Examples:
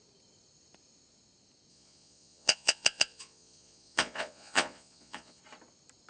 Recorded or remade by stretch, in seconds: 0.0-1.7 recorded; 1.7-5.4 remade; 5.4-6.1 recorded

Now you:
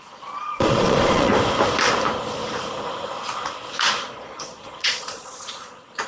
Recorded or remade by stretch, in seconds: 0.0-1.3 remade; 1.3-4.2 recorded; 4.2-6.1 remade

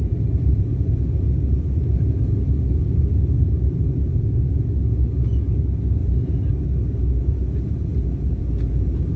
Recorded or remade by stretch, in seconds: 0.0-9.2 recorded

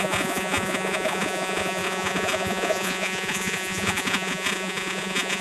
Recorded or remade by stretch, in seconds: 0.0-5.4 remade